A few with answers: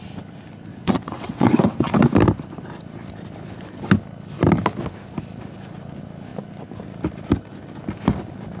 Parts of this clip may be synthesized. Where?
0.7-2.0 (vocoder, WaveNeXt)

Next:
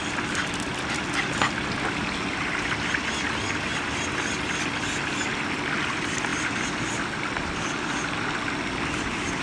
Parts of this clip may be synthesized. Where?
none

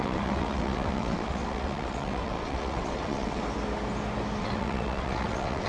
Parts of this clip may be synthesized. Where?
0.0-3.4 (vocoder, WaveNeXt); 4.4-5.7